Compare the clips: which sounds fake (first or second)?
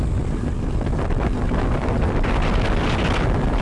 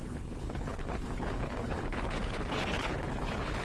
second